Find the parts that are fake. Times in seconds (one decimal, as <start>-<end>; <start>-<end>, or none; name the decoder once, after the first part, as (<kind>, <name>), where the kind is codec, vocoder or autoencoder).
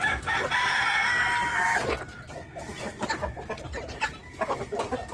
none